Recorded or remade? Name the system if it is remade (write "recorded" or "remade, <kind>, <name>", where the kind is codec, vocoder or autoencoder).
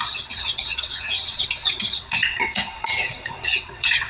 remade, vocoder, WaveNeXt